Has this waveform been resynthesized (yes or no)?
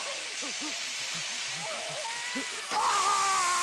no